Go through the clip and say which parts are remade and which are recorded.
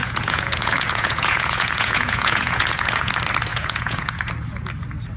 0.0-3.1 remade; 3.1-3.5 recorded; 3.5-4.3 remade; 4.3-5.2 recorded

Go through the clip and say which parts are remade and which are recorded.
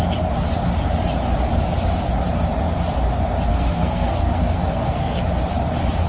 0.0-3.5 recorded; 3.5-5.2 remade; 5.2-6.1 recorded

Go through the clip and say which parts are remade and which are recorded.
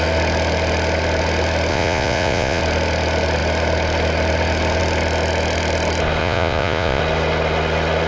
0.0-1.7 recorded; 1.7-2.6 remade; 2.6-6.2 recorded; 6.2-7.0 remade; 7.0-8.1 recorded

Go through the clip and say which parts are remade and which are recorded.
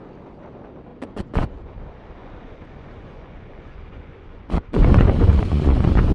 0.0-0.9 recorded; 0.9-1.7 remade; 1.7-2.2 recorded; 2.2-6.1 remade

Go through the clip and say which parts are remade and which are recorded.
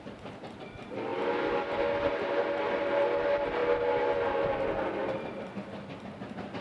0.0-6.6 recorded